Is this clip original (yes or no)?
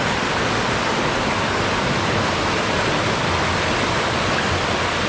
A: yes